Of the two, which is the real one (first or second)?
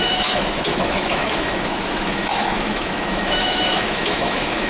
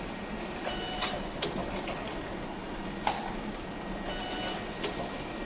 second